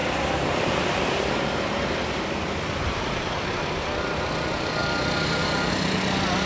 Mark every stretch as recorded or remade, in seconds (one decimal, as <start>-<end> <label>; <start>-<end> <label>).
0.0-6.5 recorded